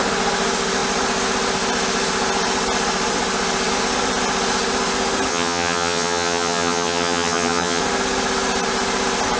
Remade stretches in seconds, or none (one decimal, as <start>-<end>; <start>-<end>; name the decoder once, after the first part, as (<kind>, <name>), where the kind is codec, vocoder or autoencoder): 5.3-7.8 (vocoder, HiFi-GAN)